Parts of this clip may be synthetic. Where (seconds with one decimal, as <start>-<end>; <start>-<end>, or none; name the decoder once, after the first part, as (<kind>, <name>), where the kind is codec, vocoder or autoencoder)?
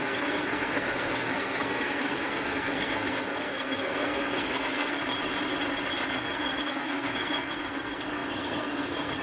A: 0.0-5.0 (codec, SNAC); 6.1-9.2